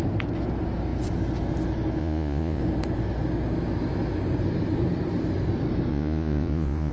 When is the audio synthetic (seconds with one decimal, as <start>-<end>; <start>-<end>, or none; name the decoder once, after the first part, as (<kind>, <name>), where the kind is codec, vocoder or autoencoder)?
2.0-2.6 (vocoder, Vocos); 5.9-6.9